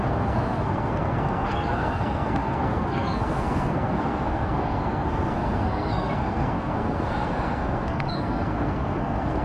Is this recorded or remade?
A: remade